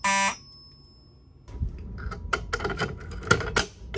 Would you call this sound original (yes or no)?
yes